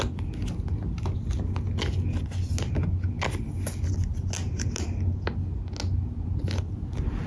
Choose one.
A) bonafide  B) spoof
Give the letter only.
A